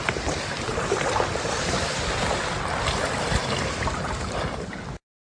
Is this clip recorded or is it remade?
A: recorded